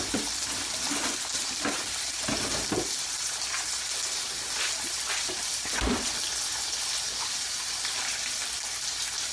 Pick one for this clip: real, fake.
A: real